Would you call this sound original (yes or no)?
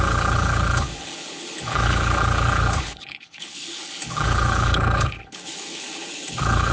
no